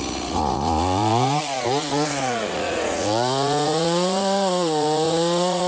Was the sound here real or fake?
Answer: fake